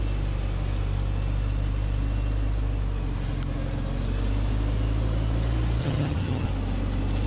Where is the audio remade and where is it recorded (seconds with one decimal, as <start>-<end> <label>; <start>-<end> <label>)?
0.0-5.8 recorded; 5.8-6.5 remade; 6.5-7.3 recorded